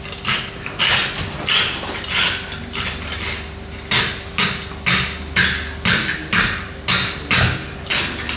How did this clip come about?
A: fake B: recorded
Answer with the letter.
B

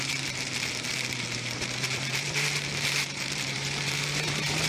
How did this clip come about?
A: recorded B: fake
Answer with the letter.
B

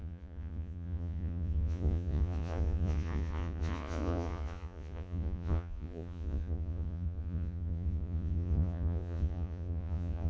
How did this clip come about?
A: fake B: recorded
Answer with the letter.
A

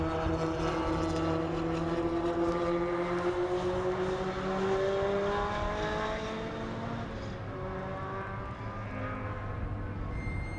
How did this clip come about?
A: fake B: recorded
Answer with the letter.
B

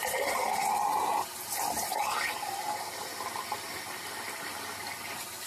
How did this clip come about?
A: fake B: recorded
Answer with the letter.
B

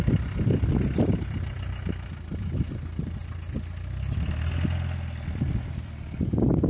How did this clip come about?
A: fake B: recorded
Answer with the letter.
B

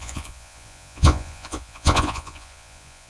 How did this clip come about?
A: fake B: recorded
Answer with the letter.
A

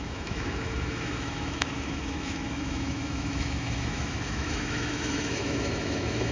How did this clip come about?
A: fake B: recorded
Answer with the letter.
A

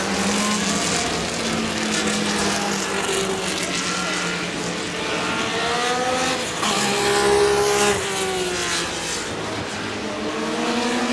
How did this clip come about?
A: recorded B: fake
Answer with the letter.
A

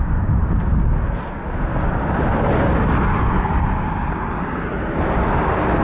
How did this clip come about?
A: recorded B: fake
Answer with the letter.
A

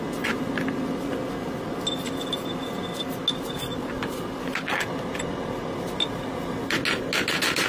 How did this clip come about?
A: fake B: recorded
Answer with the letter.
B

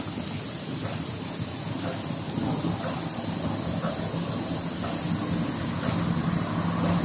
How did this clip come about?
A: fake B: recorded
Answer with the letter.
B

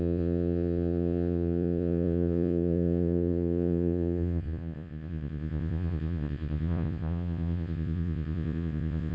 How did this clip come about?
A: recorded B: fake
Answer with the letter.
B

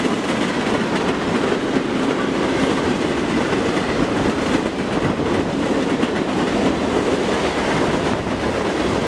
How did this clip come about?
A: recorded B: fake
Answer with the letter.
A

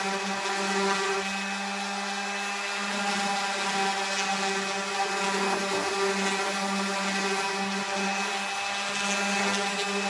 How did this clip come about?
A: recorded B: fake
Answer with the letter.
A